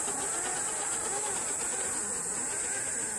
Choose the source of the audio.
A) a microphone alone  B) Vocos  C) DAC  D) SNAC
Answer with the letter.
A